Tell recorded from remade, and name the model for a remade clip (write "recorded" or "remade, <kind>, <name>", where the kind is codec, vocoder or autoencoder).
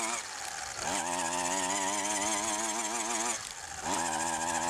recorded